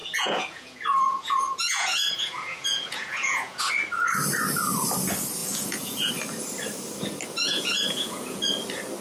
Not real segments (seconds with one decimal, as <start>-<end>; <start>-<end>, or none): 0.0-3.7; 5.4-6.1; 7.5-8.4